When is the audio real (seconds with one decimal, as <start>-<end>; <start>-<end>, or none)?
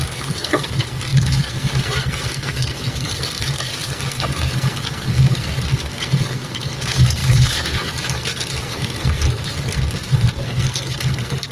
none